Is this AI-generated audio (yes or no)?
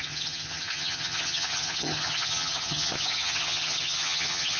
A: yes